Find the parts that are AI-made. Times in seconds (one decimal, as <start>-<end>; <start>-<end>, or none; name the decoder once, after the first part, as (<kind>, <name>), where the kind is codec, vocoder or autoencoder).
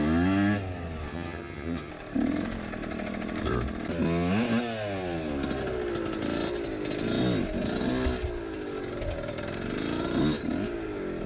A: 1.1-1.9 (vocoder, HiFi-GAN)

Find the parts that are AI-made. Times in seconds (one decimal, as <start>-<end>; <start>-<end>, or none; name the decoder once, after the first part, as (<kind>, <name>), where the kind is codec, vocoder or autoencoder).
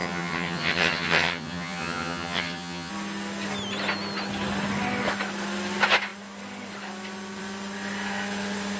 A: 0.0-2.9 (vocoder, HiFi-GAN)